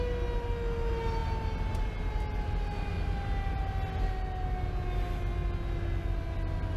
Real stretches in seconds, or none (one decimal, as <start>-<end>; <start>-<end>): 0.0-6.8

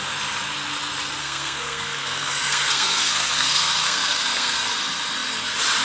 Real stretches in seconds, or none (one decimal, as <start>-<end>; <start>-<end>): 0.0-1.2; 4.7-5.8

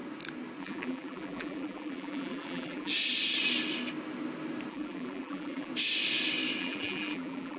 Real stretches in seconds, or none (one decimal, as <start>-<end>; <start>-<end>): 0.0-0.6; 2.9-4.7; 5.7-6.6

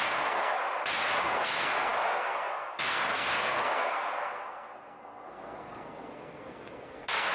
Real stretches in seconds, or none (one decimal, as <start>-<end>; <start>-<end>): 0.6-1.2

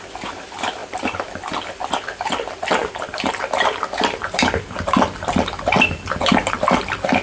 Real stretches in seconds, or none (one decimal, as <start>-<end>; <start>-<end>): 0.0-0.8; 1.4-2.8; 5.5-7.2